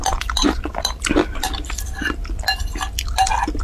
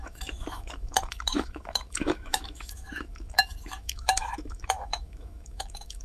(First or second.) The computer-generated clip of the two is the second